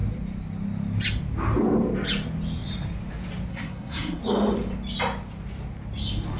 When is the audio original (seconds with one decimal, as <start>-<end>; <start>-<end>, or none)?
0.0-3.5; 4.2-6.4